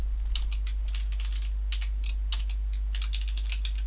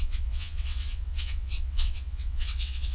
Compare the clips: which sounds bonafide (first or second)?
first